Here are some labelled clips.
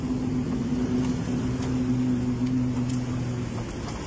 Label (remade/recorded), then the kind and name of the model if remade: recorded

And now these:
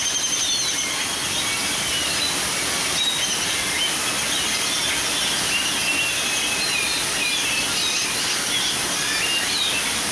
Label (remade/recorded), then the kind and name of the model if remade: recorded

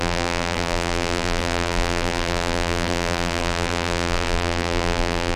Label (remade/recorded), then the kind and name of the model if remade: remade, vocoder, BigVGAN v2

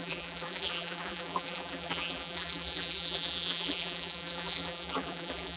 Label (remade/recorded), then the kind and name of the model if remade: remade, vocoder, BigVGAN v2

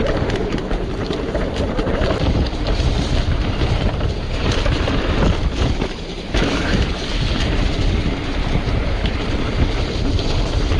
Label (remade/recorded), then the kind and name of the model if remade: remade, vocoder, BigVGAN v2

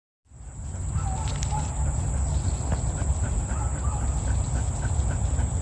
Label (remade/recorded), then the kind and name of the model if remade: recorded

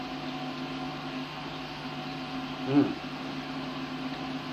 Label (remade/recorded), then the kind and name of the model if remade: recorded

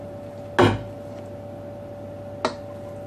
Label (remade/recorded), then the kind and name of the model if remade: recorded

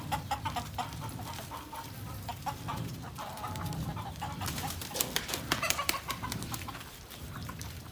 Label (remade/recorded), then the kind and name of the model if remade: remade, vocoder, BigVGAN v2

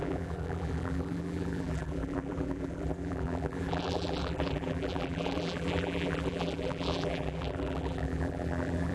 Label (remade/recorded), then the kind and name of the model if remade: remade, vocoder, BigVGAN v2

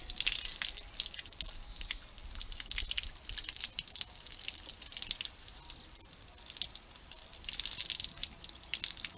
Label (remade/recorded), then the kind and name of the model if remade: recorded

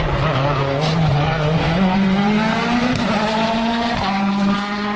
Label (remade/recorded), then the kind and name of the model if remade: remade, vocoder, BigVGAN v2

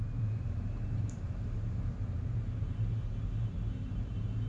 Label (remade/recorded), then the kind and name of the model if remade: remade, vocoder, BigVGAN v2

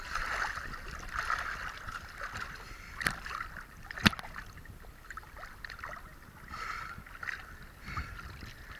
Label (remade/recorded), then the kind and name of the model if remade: recorded